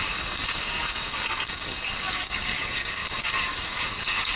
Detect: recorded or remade remade